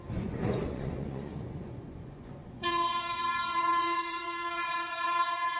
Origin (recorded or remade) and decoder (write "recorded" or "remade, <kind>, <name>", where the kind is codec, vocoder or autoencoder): remade, vocoder, Vocos